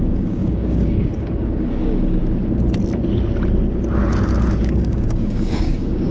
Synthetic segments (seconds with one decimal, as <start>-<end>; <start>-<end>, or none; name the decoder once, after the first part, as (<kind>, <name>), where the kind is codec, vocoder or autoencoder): 0.0-2.2 (codec, DAC); 4.6-6.1